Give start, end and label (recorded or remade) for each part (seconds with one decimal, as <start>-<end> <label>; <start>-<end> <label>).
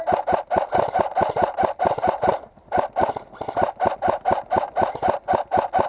0.0-5.9 recorded